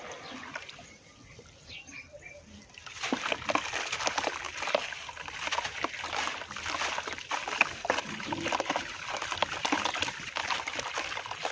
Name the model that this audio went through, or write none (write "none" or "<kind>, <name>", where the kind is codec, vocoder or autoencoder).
none